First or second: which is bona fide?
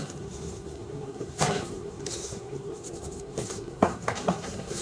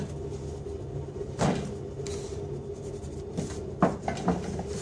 second